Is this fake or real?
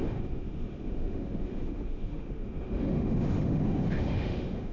fake